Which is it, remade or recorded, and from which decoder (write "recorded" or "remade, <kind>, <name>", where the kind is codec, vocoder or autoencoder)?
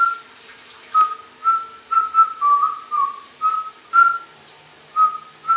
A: recorded